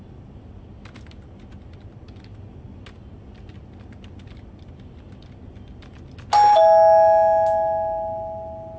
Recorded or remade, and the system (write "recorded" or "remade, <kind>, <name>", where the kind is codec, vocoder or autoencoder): recorded